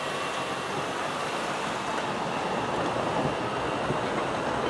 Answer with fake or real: real